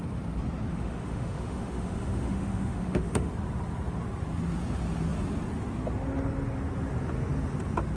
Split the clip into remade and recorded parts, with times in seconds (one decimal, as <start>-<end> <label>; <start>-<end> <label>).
0.0-0.7 recorded; 0.7-3.3 remade; 3.3-8.0 recorded